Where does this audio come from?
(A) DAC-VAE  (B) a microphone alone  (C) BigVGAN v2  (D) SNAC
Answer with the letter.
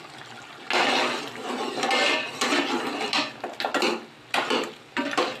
B